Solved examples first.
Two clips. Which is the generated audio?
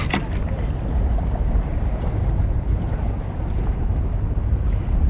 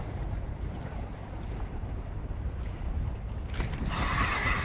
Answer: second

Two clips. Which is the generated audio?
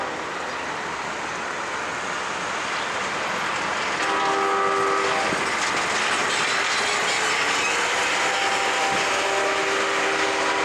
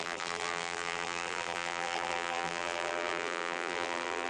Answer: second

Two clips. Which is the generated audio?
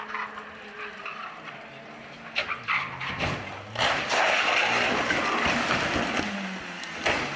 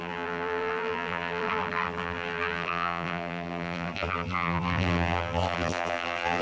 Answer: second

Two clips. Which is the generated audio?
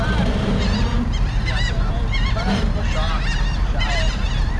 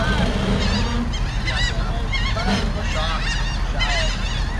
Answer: first